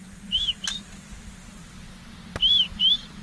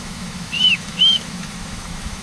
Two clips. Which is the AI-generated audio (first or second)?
second